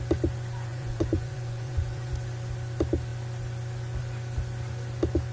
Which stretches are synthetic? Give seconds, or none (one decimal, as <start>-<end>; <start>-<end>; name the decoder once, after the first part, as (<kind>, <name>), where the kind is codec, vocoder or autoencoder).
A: 0.7-2.1 (vocoder, Vocos)